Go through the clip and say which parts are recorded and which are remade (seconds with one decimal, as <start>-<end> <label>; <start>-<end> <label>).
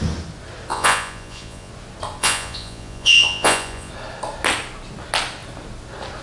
0.0-0.7 recorded; 0.7-1.7 remade; 1.7-2.2 recorded; 2.2-3.9 remade; 3.9-6.2 recorded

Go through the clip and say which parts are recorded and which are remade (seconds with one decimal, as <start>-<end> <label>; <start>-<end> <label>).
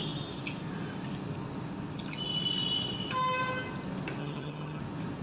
0.0-4.2 recorded; 4.2-4.8 remade; 4.8-5.2 recorded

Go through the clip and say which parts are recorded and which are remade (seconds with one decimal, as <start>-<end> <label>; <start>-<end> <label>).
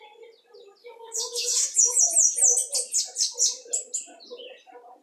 0.0-0.8 recorded; 0.8-2.0 remade; 2.0-5.0 recorded